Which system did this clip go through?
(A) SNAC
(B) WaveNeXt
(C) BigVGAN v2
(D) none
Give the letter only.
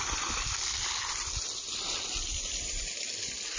D